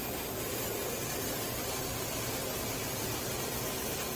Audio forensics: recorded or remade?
recorded